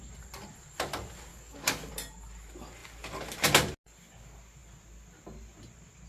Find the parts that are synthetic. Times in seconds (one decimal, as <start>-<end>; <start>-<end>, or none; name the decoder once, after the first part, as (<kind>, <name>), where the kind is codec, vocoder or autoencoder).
1.3-1.9 (codec, DAC)